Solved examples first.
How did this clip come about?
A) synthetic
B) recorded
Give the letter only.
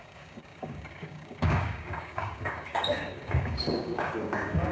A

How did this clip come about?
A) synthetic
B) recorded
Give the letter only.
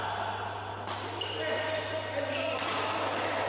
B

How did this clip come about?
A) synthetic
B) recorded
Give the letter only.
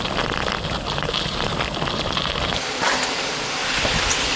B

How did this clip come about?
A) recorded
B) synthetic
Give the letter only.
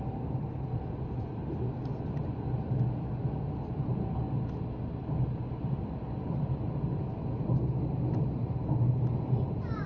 A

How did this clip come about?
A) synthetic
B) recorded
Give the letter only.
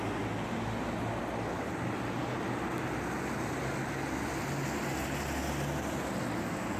B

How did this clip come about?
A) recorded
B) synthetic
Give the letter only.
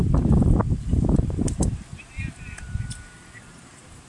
B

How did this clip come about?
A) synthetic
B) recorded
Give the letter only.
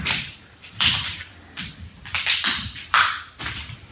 A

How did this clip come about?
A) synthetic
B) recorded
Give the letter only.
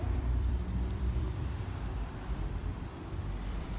A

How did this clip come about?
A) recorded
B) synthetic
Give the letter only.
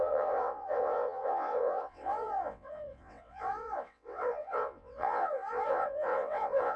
B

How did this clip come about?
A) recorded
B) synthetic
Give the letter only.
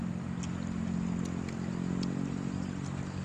A